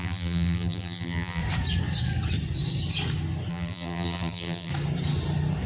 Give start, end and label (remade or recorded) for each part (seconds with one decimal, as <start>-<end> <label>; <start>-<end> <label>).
0.0-1.4 remade; 1.4-3.5 recorded; 3.5-4.7 remade; 4.7-5.7 recorded